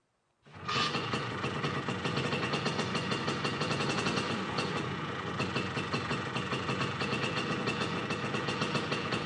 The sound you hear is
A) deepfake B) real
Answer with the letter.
A